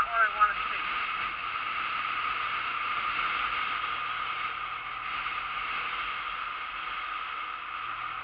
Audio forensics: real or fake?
real